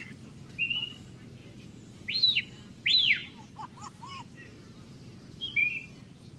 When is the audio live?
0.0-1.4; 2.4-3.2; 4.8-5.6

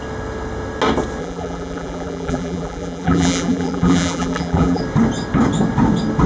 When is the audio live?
0.0-1.2; 4.8-6.3

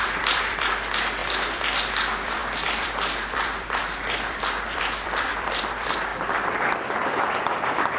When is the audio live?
none

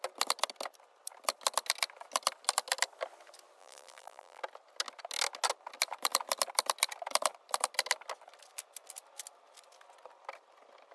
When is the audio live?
0.0-3.6; 4.4-10.9